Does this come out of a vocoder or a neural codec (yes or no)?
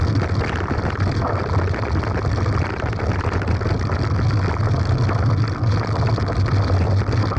no